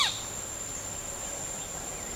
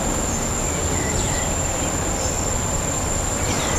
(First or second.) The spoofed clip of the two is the first